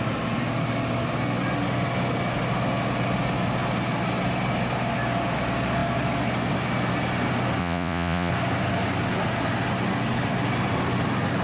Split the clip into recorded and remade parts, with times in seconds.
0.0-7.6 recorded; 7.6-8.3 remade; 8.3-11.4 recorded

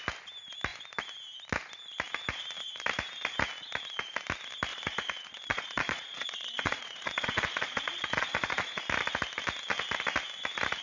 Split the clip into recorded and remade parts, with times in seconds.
0.0-4.7 recorded; 4.7-8.8 remade; 8.8-10.8 recorded

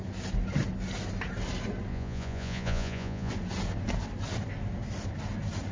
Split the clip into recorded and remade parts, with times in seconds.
0.0-1.9 recorded; 1.9-3.3 remade; 3.3-5.7 recorded

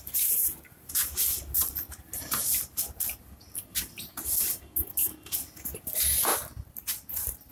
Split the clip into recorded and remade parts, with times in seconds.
0.0-7.5 recorded

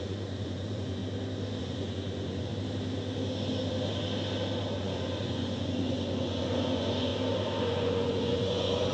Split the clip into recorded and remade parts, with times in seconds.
0.0-1.0 remade; 1.0-1.6 recorded; 1.6-2.5 remade; 2.5-4.8 recorded; 4.8-7.1 remade; 7.1-7.6 recorded; 7.6-8.9 remade

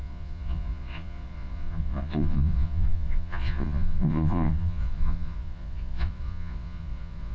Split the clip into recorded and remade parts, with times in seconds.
0.0-7.3 remade

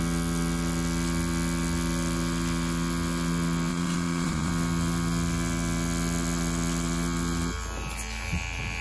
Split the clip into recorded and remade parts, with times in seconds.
0.0-3.7 recorded; 3.7-4.5 remade; 4.5-8.8 recorded

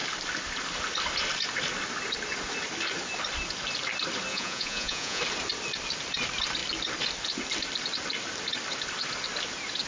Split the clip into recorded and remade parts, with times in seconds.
0.0-4.3 recorded; 4.3-5.2 remade; 5.2-9.9 recorded